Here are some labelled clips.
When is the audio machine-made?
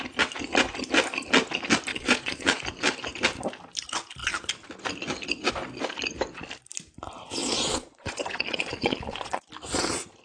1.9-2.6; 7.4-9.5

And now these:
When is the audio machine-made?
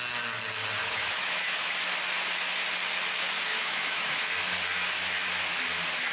0.8-1.7; 3.5-4.3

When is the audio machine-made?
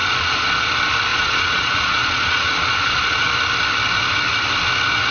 0.0-0.7; 1.1-3.3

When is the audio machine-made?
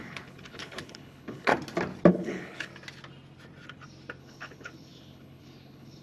0.0-1.5; 2.1-2.7; 4.2-6.0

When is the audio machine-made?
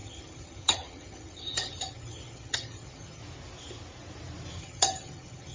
0.0-3.2; 4.6-5.5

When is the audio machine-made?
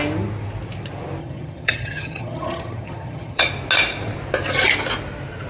1.2-3.5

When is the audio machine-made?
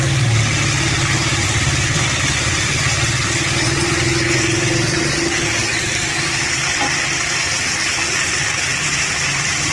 1.3-3.7; 5.7-7.6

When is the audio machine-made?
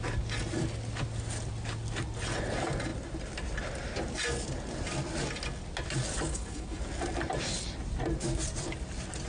6.3-6.8